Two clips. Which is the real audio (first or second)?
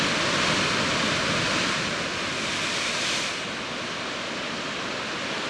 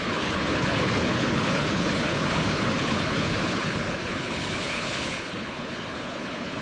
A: first